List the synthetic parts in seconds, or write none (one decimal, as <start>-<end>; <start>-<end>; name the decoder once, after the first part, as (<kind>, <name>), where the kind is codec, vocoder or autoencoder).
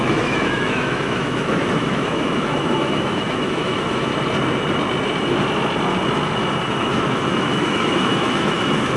0.0-4.1 (autoencoder, DAC-VAE); 6.7-9.0